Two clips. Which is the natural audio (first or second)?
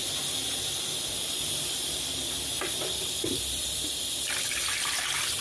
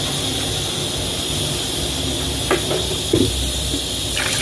second